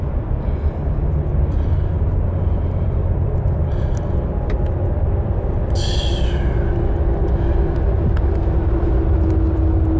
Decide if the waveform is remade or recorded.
recorded